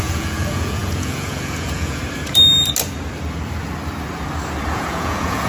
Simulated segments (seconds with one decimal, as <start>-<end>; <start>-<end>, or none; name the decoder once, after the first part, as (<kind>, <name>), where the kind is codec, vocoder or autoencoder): 0.0-2.0 (vocoder, Vocos); 4.7-5.5

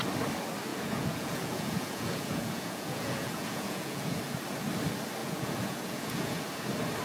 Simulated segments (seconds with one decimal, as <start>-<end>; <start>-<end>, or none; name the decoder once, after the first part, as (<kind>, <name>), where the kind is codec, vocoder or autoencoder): 0.7-4.2 (vocoder, Vocos); 5.2-6.4

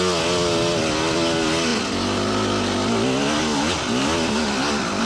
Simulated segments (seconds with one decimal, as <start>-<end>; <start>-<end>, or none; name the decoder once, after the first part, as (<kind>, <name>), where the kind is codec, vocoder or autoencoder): none

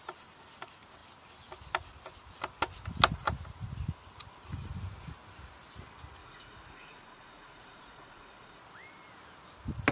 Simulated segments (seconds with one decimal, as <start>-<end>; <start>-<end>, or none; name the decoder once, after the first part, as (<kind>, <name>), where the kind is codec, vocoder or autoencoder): 6.2-8.6 (vocoder, Vocos)